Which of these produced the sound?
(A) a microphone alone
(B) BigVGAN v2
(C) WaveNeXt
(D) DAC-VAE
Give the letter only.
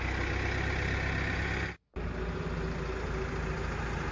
A